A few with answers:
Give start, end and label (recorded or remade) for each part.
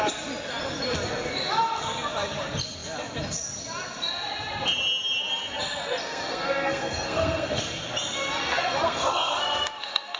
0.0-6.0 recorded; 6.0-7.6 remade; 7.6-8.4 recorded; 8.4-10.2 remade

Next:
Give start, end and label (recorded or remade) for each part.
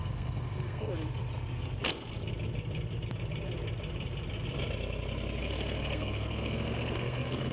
0.0-0.9 remade; 0.9-5.4 recorded; 5.4-7.5 remade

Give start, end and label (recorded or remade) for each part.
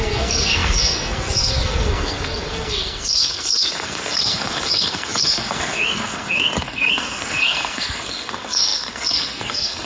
0.0-9.9 remade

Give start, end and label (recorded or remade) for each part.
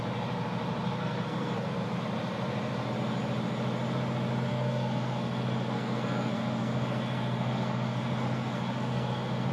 0.0-1.0 recorded; 1.0-1.7 remade; 1.7-4.5 recorded; 4.5-9.5 remade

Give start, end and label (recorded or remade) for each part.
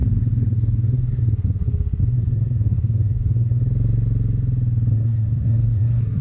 0.0-3.6 remade; 3.6-4.9 recorded; 4.9-6.2 remade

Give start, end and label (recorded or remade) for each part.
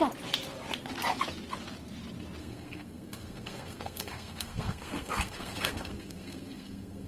0.0-2.4 recorded; 2.4-7.1 remade